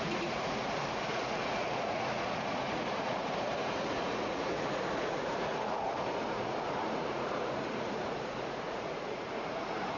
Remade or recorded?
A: remade